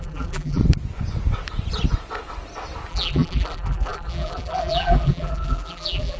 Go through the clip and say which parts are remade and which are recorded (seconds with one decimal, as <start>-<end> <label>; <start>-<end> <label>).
0.0-0.6 remade; 0.6-2.9 recorded; 2.9-6.2 remade